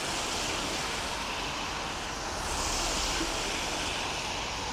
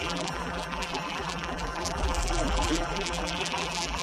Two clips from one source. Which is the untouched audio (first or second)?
first